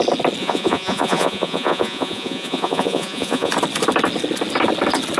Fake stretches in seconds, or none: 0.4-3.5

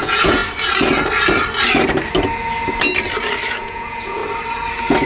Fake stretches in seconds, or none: 0.0-0.4; 3.5-4.2

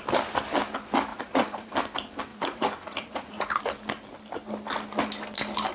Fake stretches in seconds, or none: 1.1-1.7; 2.3-3.6